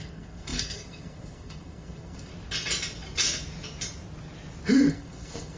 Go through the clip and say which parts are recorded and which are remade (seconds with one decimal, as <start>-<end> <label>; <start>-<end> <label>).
0.0-2.3 remade; 2.3-4.9 recorded; 4.9-5.6 remade